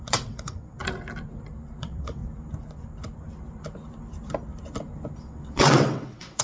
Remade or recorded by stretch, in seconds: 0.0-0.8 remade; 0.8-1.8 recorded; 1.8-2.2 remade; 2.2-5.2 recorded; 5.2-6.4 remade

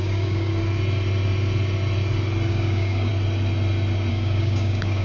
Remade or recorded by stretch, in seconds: 0.0-0.5 remade; 0.5-2.5 recorded; 2.5-3.1 remade; 3.1-4.1 recorded; 4.1-5.0 remade

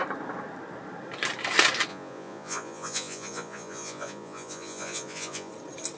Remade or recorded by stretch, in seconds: 0.0-1.9 recorded; 1.9-5.5 remade; 5.5-6.0 recorded

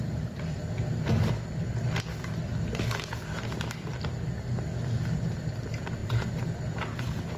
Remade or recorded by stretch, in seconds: 0.0-0.6 remade; 0.6-5.0 recorded; 5.0-7.4 remade

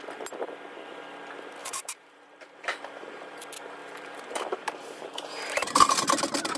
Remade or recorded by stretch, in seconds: 0.0-1.6 recorded; 1.6-3.4 remade; 3.4-3.8 recorded; 3.8-5.9 remade; 5.9-6.6 recorded

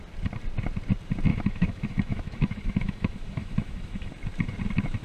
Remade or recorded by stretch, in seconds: 0.0-1.3 recorded; 1.3-4.1 remade; 4.1-5.0 recorded